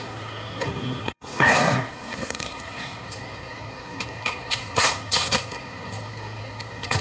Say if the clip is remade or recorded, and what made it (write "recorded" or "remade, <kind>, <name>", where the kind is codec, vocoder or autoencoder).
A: remade, codec, SNAC